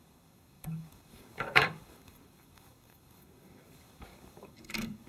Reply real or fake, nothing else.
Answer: fake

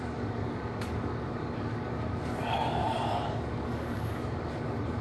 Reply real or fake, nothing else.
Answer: fake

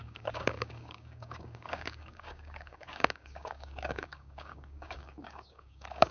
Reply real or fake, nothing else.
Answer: fake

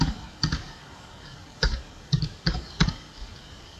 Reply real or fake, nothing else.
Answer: fake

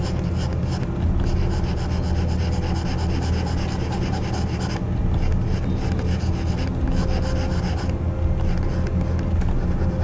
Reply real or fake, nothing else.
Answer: real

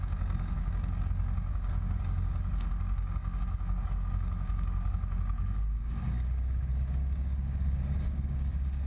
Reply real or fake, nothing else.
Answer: fake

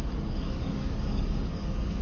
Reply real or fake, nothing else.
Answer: fake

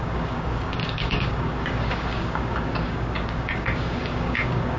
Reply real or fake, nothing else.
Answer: fake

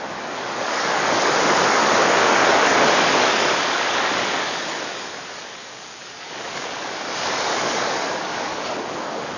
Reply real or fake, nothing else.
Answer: fake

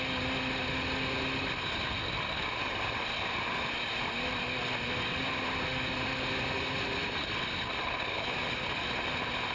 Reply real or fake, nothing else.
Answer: real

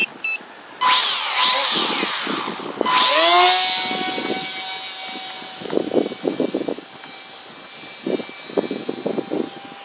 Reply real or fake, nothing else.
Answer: real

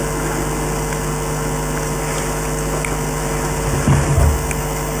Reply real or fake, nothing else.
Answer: real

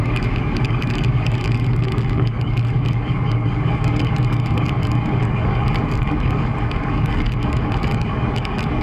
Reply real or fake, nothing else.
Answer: fake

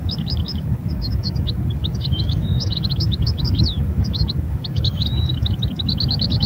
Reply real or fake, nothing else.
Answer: fake